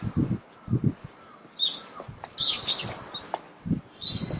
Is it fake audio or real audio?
real